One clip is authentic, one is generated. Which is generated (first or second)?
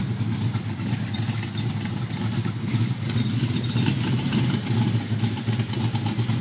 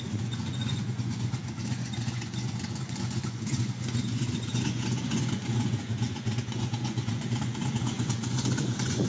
second